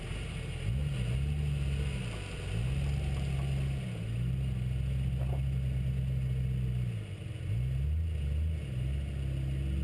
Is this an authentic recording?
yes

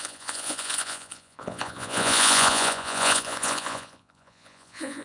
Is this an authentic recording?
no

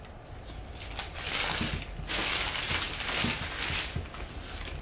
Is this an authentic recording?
yes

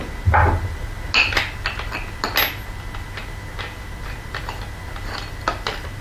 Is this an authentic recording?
yes